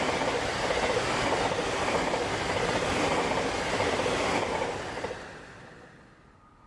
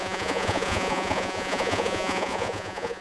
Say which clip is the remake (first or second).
second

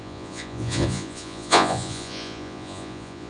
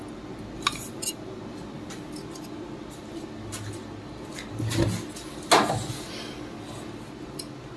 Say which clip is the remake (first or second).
first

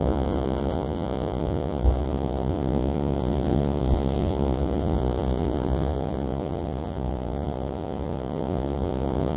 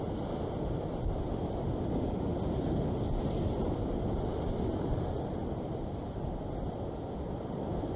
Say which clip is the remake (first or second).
first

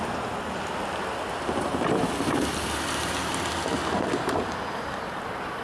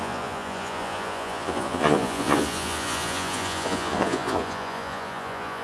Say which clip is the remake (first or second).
second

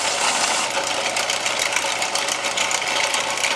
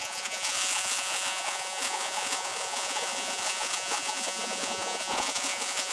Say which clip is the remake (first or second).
second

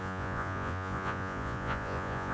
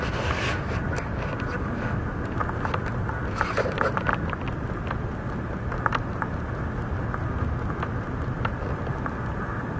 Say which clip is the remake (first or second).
first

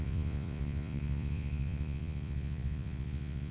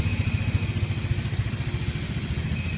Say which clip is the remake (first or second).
first